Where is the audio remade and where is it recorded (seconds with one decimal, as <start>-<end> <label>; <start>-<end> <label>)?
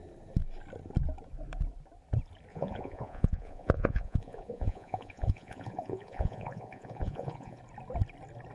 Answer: 0.0-2.5 recorded; 2.5-7.6 remade; 7.6-8.5 recorded